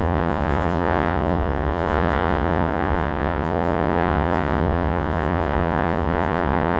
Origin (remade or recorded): remade